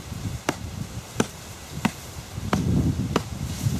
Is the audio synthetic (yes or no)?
yes